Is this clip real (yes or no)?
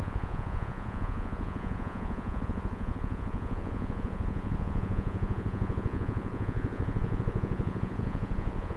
no